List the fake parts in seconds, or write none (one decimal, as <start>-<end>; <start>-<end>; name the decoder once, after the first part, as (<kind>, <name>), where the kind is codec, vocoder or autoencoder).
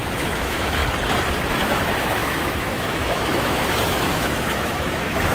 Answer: 0.0-0.8 (autoencoder, DAC-VAE); 1.5-5.3